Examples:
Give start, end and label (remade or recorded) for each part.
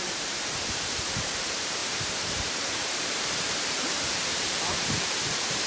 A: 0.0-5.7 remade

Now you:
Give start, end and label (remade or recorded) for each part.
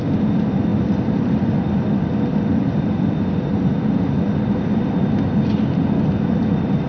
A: 0.0-0.7 recorded; 0.7-1.5 remade; 1.5-6.9 recorded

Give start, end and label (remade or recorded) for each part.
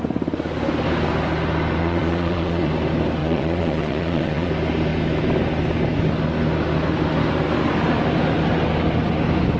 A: 0.0-1.8 recorded; 1.8-2.7 remade; 2.7-3.2 recorded; 3.2-4.5 remade; 4.5-9.6 recorded